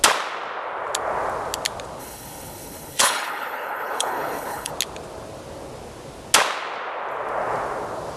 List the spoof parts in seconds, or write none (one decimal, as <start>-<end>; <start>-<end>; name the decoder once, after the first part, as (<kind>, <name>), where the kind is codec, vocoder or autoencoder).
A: 2.0-4.7 (codec, HILCodec)